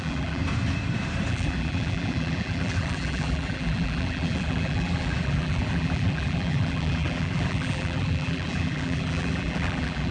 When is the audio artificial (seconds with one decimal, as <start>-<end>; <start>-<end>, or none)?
0.0-0.4; 1.3-10.1